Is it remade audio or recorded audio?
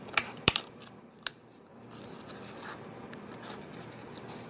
remade